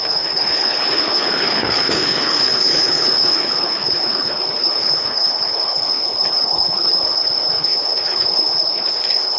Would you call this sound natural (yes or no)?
no